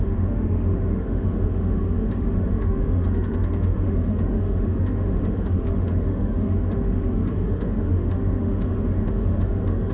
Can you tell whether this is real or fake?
fake